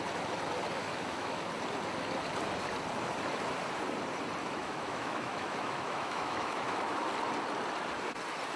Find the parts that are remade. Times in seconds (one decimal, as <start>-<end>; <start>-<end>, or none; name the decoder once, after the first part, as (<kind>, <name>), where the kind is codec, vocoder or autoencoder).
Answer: 0.8-1.5 (autoencoder, DAC-VAE); 4.4-7.1

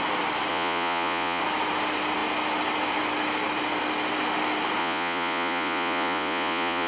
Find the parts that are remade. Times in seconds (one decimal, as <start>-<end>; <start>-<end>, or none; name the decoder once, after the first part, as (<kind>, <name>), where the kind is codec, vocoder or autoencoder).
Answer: 0.5-1.4 (vocoder, Vocos); 4.8-6.9

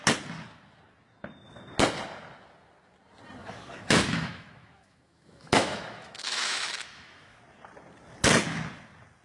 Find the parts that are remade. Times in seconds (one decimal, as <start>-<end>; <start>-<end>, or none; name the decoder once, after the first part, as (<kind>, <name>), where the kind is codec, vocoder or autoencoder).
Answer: 3.4-7.4 (autoencoder, DAC-VAE)

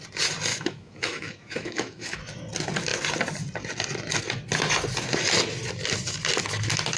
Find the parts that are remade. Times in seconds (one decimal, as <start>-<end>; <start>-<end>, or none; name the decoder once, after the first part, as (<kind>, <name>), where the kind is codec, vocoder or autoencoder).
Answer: 0.5-2.2 (autoencoder, DAC-VAE)

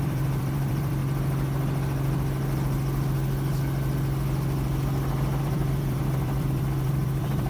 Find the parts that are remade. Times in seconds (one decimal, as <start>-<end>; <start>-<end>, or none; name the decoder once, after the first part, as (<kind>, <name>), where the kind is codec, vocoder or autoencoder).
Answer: 0.0-1.0 (vocoder, BigVGAN v2); 5.4-7.5

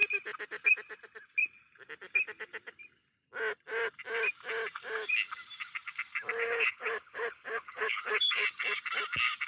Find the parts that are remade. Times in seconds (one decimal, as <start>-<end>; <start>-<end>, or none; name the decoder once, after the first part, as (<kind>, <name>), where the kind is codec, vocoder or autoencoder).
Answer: 6.4-8.4 (codec, HILCodec)

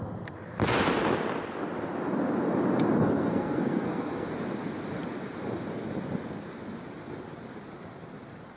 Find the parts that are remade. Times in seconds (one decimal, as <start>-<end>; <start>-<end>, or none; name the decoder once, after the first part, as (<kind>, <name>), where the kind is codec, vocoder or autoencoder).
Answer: 3.0-4.3 (codec, SNAC)